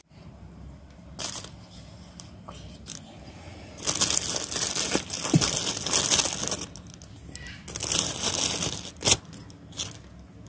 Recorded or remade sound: recorded